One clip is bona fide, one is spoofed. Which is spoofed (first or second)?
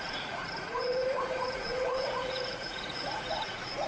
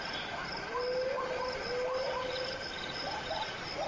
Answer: first